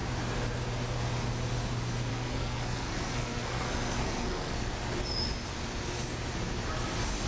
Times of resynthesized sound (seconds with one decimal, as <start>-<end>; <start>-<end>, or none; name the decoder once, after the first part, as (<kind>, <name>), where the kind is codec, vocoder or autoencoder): 2.1-4.7 (codec, SNAC)